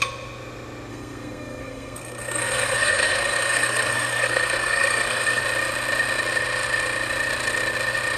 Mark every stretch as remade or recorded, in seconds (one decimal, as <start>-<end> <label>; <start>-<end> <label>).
0.0-0.9 recorded; 0.9-5.4 remade; 5.4-8.2 recorded